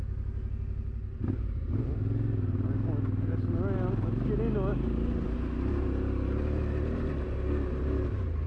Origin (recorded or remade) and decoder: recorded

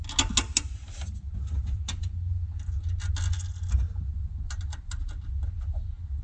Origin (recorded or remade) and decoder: recorded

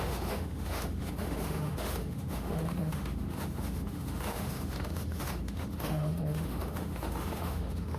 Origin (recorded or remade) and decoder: remade, autoencoder, DAC-VAE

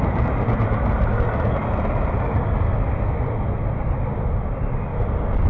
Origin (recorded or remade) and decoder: recorded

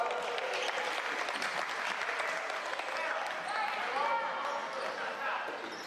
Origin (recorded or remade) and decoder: recorded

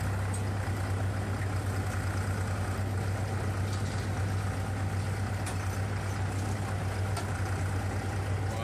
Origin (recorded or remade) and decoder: recorded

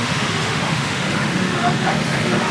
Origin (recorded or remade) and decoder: remade, autoencoder, DAC-VAE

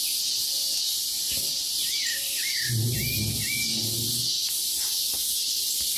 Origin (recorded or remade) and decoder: recorded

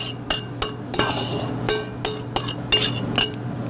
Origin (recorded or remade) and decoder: recorded